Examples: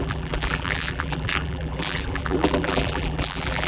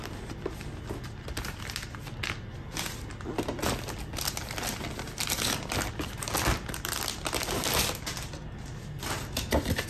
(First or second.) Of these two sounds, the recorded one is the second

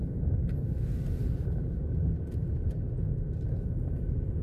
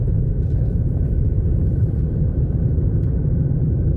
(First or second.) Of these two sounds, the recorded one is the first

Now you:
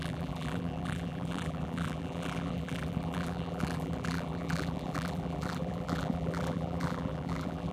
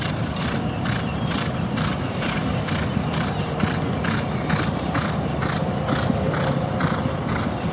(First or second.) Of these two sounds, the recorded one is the second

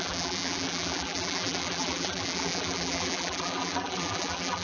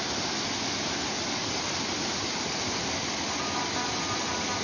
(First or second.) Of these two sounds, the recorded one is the second